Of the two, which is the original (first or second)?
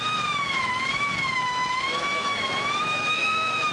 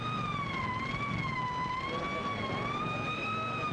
second